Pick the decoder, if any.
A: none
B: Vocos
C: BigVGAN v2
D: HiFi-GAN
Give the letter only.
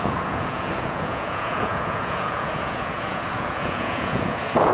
B